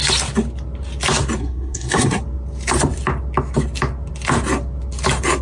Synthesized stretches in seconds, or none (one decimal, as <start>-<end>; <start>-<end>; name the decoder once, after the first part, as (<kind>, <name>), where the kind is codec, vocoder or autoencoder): 1.4-2.2 (codec, SNAC)